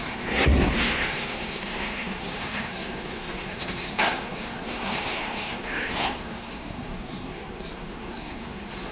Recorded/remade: remade